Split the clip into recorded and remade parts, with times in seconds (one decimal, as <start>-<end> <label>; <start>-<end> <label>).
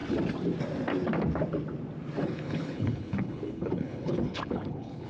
0.0-2.2 recorded; 2.2-5.1 remade